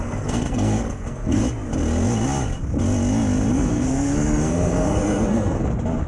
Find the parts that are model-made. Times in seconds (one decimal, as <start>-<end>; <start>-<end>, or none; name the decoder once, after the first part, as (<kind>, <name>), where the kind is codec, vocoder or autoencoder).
0.0-1.4 (codec, SNAC); 3.5-5.6